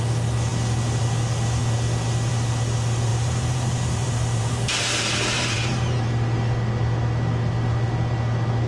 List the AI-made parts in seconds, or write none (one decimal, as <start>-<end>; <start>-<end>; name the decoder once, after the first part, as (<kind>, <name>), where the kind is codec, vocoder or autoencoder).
3.1-6.0 (vocoder, BigVGAN v2)